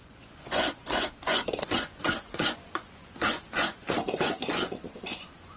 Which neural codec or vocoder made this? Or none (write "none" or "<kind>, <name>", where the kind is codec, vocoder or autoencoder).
vocoder, Vocos